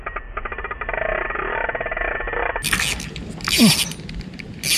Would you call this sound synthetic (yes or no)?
no